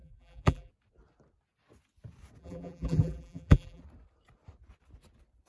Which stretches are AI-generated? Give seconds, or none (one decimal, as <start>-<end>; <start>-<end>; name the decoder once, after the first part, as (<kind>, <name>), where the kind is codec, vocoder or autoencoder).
0.0-0.7 (vocoder, BigVGAN v2); 2.4-3.8